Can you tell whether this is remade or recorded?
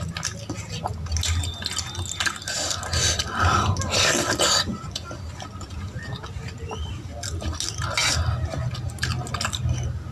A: recorded